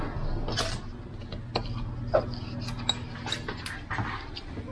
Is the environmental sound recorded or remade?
recorded